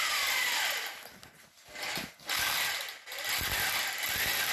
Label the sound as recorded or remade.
recorded